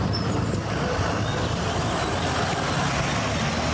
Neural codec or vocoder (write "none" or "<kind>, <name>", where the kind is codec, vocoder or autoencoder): none